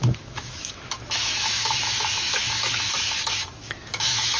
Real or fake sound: fake